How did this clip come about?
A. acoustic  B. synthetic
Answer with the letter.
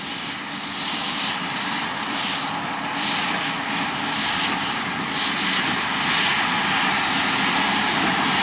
A